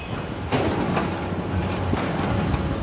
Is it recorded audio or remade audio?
recorded